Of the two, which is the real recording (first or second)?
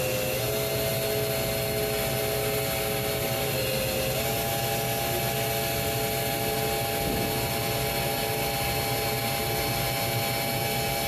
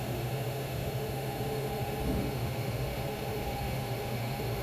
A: first